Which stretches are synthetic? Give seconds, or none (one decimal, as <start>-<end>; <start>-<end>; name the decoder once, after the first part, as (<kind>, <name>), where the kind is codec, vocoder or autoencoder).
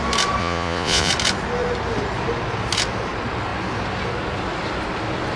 0.4-1.1 (vocoder, Vocos)